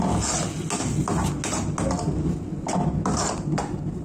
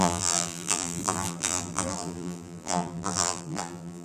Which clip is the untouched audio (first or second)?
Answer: first